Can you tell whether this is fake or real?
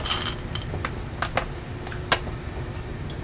real